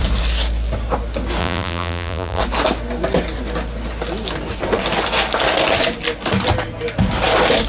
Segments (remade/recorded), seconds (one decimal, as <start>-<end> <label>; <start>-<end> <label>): 0.0-1.4 recorded; 1.4-2.4 remade; 2.4-7.7 recorded